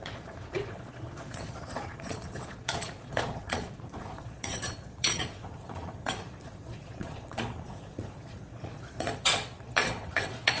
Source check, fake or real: fake